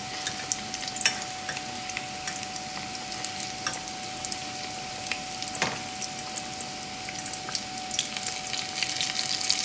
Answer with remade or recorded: recorded